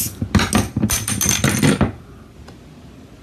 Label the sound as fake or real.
real